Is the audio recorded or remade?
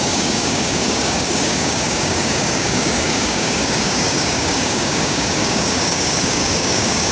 remade